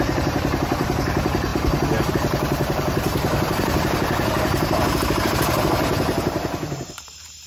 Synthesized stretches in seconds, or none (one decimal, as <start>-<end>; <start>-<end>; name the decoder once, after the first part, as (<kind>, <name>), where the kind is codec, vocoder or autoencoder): 0.0-1.5 (vocoder, BigVGAN v2); 2.1-7.5